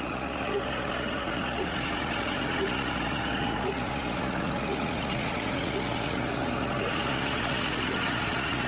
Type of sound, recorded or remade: remade